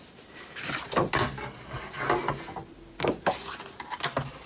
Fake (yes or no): no